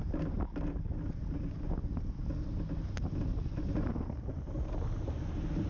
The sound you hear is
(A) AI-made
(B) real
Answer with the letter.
B